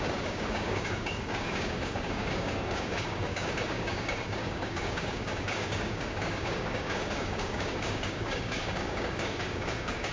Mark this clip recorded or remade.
remade